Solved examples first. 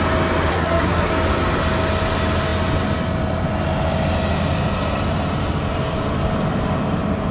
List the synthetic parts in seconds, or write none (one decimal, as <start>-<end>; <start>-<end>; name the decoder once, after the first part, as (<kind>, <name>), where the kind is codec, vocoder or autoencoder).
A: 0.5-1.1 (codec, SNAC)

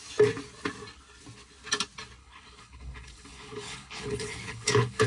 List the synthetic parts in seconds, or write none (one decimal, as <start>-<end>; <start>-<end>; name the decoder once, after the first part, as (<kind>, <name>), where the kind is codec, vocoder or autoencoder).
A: 2.2-5.1 (codec, HILCodec)

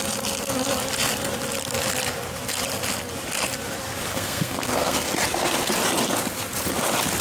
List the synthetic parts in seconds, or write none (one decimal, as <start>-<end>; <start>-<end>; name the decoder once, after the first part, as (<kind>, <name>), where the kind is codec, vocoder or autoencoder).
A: 4.1-5.1 (codec, SNAC)